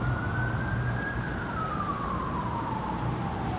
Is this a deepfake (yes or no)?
yes